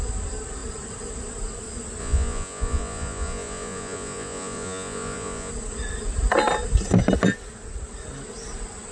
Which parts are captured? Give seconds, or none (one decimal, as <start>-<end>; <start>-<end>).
0.0-2.0; 5.5-8.9